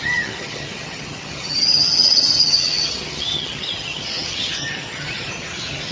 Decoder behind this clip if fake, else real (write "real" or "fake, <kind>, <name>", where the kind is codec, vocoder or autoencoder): fake, vocoder, HiFi-GAN